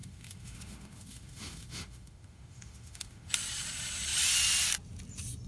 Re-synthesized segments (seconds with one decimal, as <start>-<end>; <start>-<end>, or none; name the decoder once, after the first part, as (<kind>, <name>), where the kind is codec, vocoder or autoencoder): 0.0-3.3 (autoencoder, DAC-VAE)